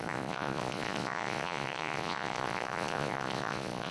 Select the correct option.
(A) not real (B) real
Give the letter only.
A